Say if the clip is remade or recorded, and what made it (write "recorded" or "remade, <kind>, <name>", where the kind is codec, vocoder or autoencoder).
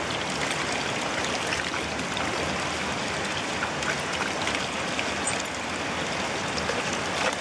recorded